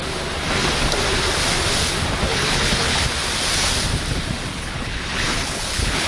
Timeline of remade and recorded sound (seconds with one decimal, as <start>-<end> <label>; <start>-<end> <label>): 0.0-2.3 recorded; 2.3-3.0 remade; 3.0-4.5 recorded; 4.5-6.1 remade